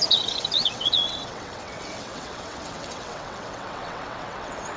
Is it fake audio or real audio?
fake